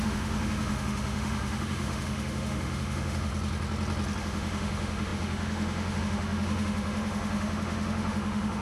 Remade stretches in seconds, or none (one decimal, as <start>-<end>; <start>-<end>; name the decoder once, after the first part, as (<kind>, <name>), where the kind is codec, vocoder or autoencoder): 0.0-3.3 (autoencoder, DAC-VAE); 4.2-8.6